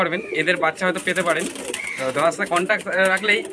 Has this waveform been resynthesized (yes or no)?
yes